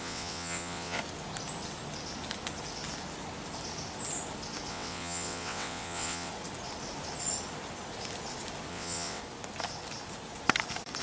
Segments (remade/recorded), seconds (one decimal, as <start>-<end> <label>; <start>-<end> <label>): 0.0-1.0 remade; 1.0-4.7 recorded; 4.7-6.3 remade; 6.3-8.7 recorded; 8.7-9.2 remade; 9.2-11.0 recorded